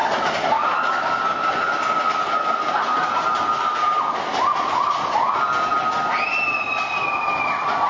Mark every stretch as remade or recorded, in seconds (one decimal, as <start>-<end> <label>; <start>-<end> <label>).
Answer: 0.0-7.9 recorded